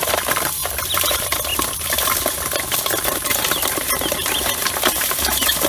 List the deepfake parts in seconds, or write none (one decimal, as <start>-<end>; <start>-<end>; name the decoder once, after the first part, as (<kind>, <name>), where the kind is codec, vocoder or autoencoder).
0.0-0.6 (vocoder, BigVGAN v2); 1.1-1.5; 3.0-5.7